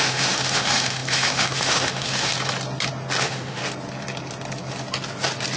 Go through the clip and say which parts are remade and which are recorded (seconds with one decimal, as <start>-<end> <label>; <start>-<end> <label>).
0.0-2.3 remade; 2.3-3.2 recorded; 3.2-3.6 remade; 3.6-5.6 recorded